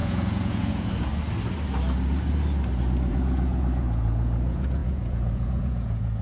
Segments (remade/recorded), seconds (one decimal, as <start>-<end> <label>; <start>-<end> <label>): 0.0-1.1 remade; 1.1-3.1 recorded; 3.1-6.2 remade